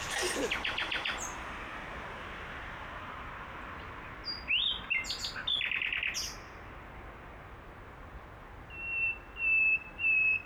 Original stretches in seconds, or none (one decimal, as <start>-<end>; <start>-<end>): 0.0-10.5

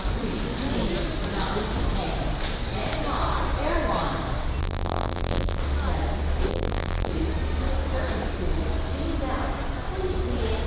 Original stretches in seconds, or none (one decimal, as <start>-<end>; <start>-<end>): 0.0-4.6; 5.6-6.5; 7.1-10.7